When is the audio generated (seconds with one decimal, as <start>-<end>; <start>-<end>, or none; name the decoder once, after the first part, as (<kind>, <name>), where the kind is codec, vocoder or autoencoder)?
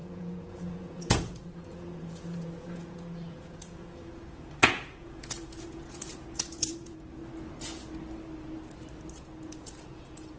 0.0-7.2 (vocoder, Vocos); 9.1-10.4